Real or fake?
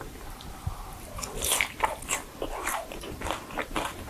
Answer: fake